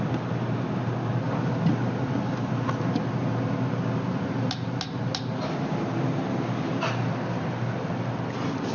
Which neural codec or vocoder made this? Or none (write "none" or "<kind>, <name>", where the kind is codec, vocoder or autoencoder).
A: none